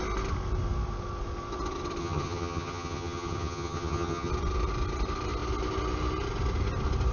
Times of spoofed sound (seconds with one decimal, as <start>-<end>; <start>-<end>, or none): 2.0-4.3